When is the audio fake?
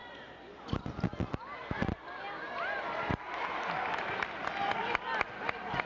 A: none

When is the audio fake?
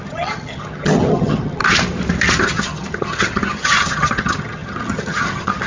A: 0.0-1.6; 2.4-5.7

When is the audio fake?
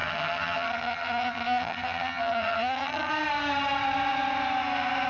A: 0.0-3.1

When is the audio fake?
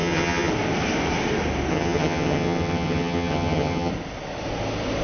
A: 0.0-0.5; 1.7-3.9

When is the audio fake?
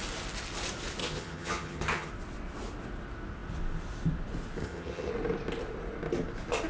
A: 1.0-2.1; 4.6-5.1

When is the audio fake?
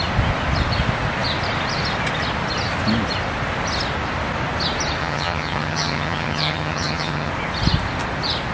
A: 5.0-7.3